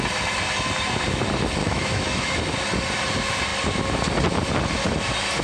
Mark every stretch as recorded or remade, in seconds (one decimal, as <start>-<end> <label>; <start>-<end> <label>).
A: 0.0-1.6 recorded; 1.6-2.4 remade; 2.4-5.4 recorded